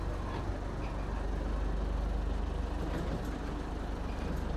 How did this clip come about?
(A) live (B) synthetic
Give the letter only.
A